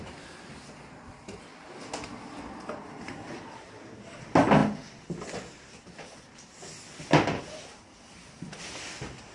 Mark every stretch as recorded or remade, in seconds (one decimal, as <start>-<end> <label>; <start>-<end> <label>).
0.0-9.3 recorded

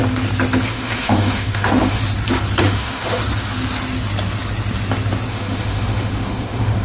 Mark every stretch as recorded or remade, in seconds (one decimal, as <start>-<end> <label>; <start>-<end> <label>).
0.0-0.7 recorded; 0.7-2.0 remade; 2.0-2.6 recorded; 2.6-3.2 remade; 3.2-5.3 recorded; 5.3-6.8 remade

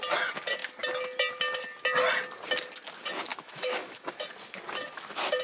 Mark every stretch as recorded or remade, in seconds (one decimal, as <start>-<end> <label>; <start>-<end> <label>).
0.0-3.3 recorded; 3.3-4.1 remade; 4.1-5.4 recorded

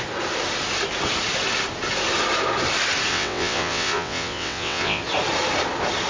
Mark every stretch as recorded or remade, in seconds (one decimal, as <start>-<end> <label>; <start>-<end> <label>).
0.0-3.1 recorded; 3.1-5.0 remade; 5.0-6.1 recorded

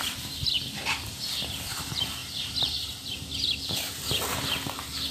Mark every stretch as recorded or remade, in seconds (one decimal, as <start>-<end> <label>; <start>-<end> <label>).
0.0-2.2 remade; 2.2-3.4 recorded; 3.4-5.1 remade

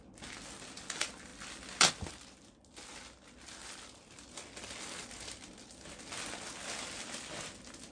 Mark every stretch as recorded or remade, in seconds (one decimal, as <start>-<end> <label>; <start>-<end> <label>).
0.0-7.9 recorded

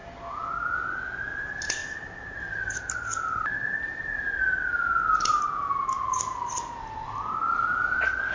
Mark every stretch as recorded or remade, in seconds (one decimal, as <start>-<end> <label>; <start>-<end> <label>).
0.0-8.3 recorded

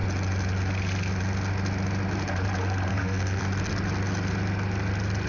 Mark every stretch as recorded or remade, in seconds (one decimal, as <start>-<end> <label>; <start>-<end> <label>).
0.0-2.9 recorded; 2.9-3.4 remade; 3.4-5.3 recorded